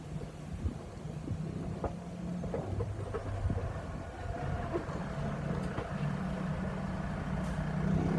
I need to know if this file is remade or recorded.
recorded